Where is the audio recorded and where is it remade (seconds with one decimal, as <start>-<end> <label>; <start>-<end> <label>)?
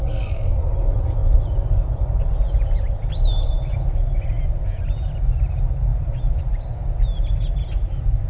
0.0-0.7 remade; 0.7-8.3 recorded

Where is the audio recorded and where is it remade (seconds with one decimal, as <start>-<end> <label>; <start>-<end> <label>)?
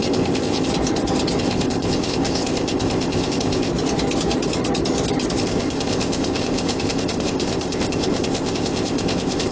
0.0-0.7 remade; 0.7-1.4 recorded; 1.4-3.7 remade; 3.7-5.4 recorded; 5.4-9.5 remade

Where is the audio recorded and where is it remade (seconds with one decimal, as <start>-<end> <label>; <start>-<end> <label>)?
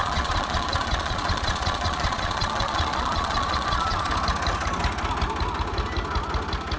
0.0-4.1 remade; 4.1-6.8 recorded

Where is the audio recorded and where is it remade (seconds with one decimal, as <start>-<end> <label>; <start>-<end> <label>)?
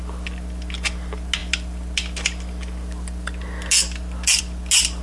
0.0-5.0 recorded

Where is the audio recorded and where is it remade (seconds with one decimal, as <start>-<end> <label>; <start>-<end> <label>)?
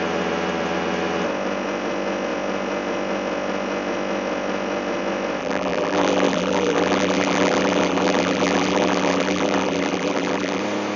0.0-5.4 recorded; 5.4-10.6 remade; 10.6-11.0 recorded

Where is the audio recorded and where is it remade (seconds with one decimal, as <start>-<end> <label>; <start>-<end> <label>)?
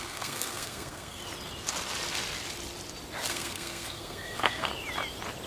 0.0-1.2 remade; 1.2-3.3 recorded; 3.3-4.7 remade; 4.7-5.5 recorded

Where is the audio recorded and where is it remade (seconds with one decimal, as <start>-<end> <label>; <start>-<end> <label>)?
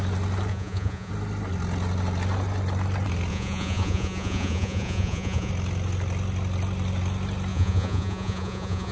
0.0-0.5 recorded; 0.5-1.1 remade; 1.1-3.3 recorded; 3.3-5.5 remade; 5.5-7.5 recorded; 7.5-8.9 remade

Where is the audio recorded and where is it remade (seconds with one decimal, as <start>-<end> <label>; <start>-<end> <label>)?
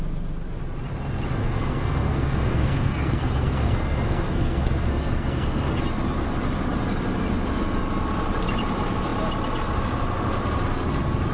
0.0-1.4 recorded; 1.4-5.8 remade; 5.8-11.3 recorded